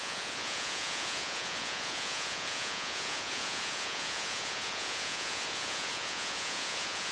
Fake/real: fake